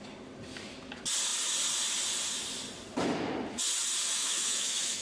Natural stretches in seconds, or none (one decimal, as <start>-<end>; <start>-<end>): 0.0-4.2

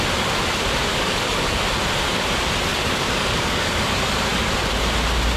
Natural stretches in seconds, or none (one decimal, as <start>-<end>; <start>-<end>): 0.0-0.9; 1.6-2.7; 3.8-5.4

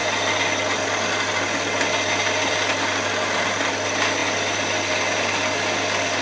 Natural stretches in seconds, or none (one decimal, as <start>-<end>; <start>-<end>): 0.0-6.2

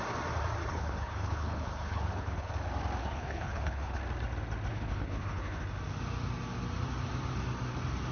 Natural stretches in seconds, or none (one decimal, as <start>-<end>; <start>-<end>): 0.0-0.7; 2.5-3.0; 4.0-4.7; 5.6-8.1